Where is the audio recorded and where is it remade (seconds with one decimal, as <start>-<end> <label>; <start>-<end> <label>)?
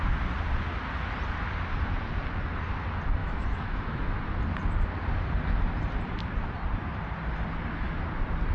0.0-3.2 recorded; 3.2-4.0 remade; 4.0-8.5 recorded